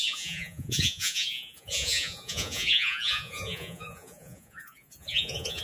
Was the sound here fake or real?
fake